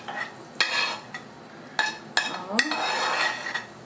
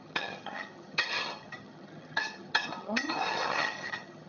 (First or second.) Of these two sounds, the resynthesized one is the second